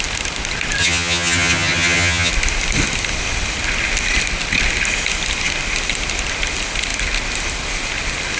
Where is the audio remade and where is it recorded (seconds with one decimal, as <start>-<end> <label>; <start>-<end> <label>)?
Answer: 0.0-0.8 recorded; 0.8-2.3 remade; 2.3-8.4 recorded